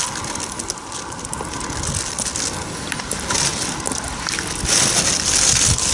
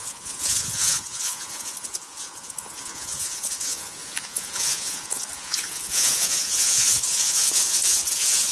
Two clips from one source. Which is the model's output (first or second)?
second